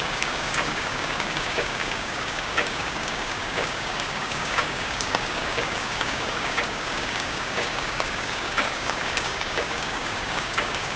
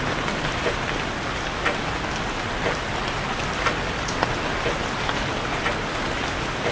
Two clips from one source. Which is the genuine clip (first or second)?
second